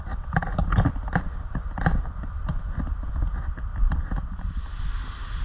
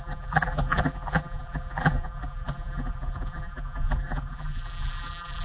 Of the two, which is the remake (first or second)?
second